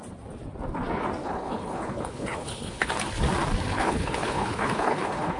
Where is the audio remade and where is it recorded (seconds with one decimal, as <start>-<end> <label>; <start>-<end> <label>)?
0.0-1.2 recorded; 1.2-2.9 remade; 2.9-3.7 recorded; 3.7-5.4 remade